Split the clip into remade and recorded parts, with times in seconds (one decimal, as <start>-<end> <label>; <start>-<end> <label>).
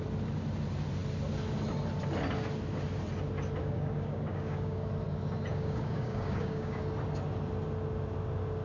0.0-3.6 recorded; 3.6-4.9 remade; 4.9-5.5 recorded; 5.5-6.8 remade; 6.8-8.6 recorded